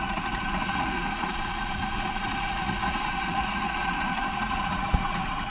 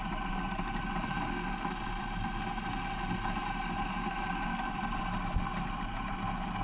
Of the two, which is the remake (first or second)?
first